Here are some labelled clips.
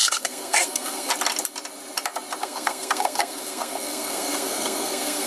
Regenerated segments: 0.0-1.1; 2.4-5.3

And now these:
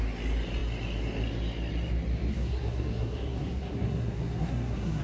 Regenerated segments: 2.3-5.0

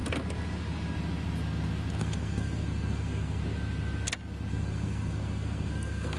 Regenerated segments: 2.0-3.4; 4.5-6.2

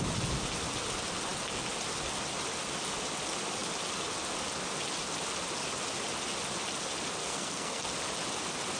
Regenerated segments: 7.2-7.8

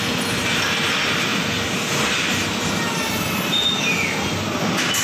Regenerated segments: none

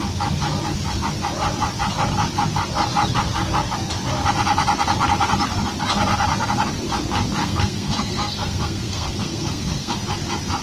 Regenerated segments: 7.4-9.9